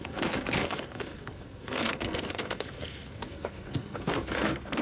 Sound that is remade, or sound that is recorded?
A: remade